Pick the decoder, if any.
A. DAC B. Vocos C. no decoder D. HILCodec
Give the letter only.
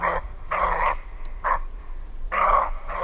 C